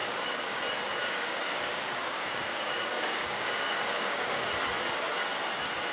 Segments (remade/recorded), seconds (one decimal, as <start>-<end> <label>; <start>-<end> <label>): 0.0-0.6 remade; 0.6-1.0 recorded; 1.0-4.5 remade; 4.5-5.9 recorded